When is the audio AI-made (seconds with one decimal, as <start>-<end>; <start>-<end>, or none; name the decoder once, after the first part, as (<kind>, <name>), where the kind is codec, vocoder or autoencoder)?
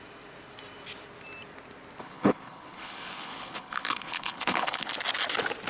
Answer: 2.0-4.9 (codec, HILCodec)